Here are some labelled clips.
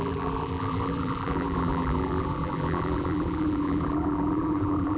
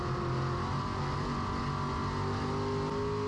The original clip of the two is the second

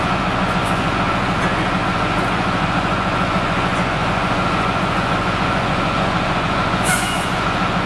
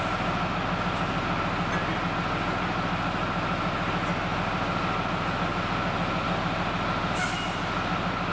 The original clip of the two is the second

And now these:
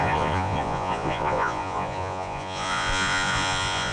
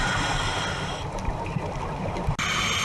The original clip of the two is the second